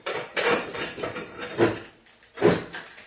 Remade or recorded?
recorded